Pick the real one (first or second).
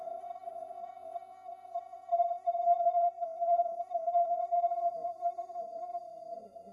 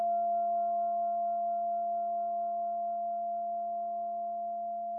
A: second